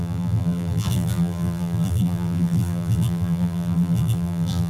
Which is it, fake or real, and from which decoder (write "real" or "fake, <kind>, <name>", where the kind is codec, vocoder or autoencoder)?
fake, vocoder, BigVGAN v2